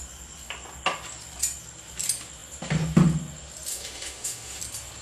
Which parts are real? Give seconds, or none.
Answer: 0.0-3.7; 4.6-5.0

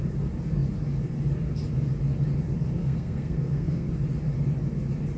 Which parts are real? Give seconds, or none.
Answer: 0.0-2.8; 3.9-5.2

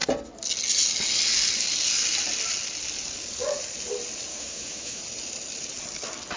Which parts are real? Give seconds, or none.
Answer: 0.0-4.3; 5.0-6.4

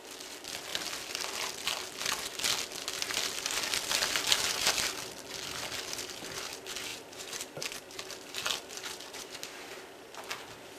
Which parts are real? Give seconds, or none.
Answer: 0.0-6.9; 9.4-10.8

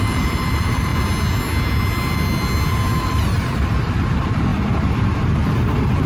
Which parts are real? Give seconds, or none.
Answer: 0.9-3.0

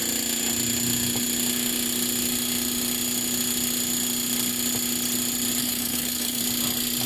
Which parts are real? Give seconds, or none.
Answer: 0.0-5.6; 6.4-7.1